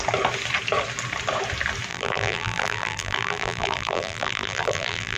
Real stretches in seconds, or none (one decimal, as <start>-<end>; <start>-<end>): 0.0-1.9

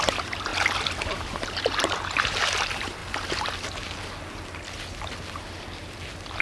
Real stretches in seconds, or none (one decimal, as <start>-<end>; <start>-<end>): 0.5-1.1; 3.0-6.4

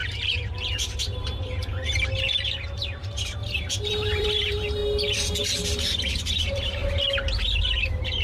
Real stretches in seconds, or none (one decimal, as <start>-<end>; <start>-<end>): 4.8-5.8; 6.8-7.6

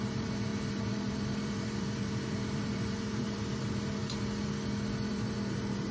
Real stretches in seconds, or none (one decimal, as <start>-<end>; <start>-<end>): 4.0-5.1